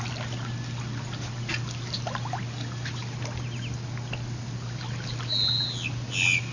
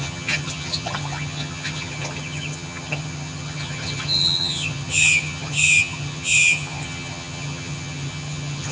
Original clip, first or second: first